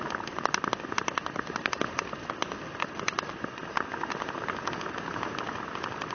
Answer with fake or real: real